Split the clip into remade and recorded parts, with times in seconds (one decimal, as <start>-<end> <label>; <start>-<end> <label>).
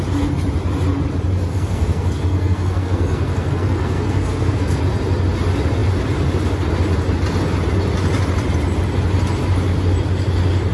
0.0-1.5 recorded; 1.5-4.8 remade; 4.8-10.7 recorded